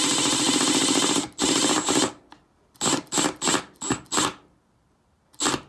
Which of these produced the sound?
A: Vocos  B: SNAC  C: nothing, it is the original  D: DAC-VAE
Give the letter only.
C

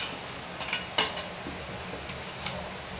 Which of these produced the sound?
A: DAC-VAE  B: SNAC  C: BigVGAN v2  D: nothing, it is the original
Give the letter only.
D